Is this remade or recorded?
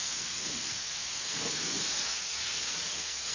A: remade